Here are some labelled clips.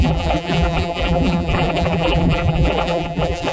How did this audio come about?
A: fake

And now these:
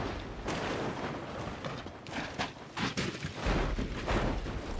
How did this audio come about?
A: real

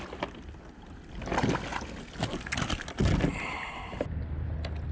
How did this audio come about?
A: real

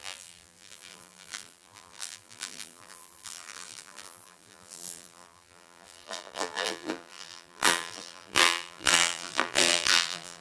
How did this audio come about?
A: fake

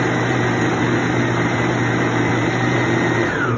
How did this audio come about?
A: fake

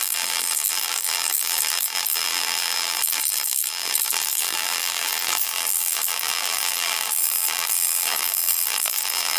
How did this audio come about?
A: fake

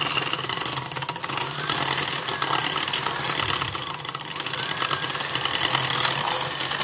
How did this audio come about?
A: real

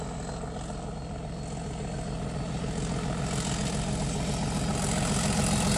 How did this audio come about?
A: real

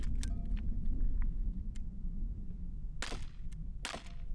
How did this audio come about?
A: real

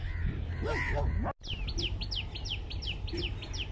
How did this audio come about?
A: real